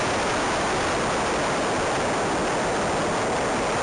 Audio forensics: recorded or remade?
recorded